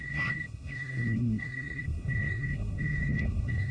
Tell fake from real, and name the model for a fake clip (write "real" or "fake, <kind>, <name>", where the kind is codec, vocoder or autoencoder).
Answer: fake, codec, SNAC